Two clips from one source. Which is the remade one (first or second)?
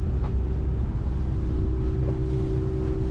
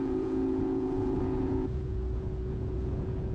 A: second